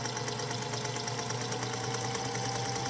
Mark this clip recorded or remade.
recorded